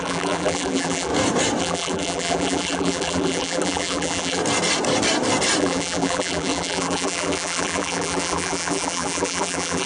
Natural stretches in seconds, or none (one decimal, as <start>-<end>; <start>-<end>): 1.1-1.6; 4.4-5.6